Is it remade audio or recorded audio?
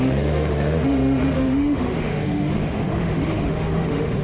remade